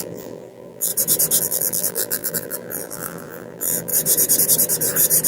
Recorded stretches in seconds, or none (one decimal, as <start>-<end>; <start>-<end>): 0.9-1.4; 3.9-5.3